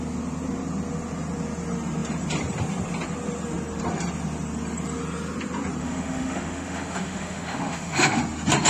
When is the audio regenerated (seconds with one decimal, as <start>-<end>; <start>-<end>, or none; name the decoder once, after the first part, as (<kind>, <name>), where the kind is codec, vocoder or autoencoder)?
5.8-8.2 (autoencoder, DAC-VAE)